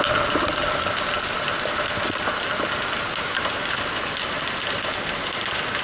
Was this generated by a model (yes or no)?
no